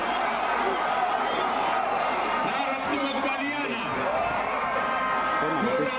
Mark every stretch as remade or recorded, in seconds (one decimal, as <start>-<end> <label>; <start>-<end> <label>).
0.0-6.0 recorded